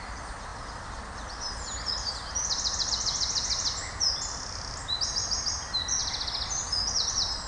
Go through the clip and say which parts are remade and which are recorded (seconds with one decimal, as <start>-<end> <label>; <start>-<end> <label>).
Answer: 0.0-7.5 recorded